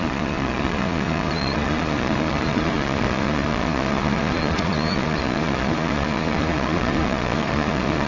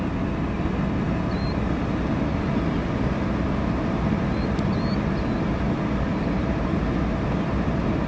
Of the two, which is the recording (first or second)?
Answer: second